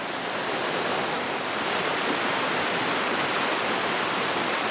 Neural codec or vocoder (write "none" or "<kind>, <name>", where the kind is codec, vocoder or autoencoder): vocoder, BigVGAN v2